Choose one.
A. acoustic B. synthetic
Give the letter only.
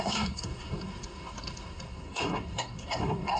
B